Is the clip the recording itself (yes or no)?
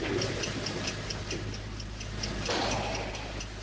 yes